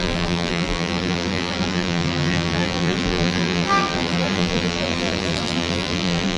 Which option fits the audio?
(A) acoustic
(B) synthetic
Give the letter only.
B